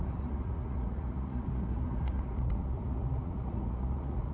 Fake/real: fake